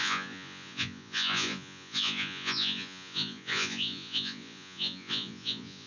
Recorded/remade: remade